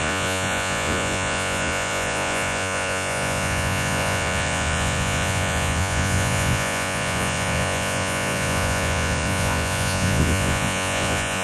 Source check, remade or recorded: remade